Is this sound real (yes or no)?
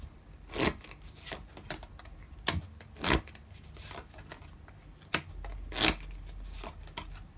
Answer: yes